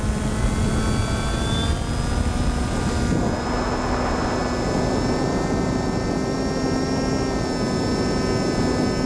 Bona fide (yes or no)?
yes